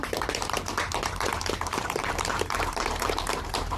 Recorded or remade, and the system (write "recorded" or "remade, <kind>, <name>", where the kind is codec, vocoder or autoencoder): remade, vocoder, BigVGAN v2